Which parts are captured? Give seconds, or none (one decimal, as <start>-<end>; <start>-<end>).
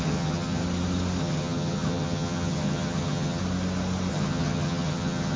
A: 0.6-1.2; 3.4-4.1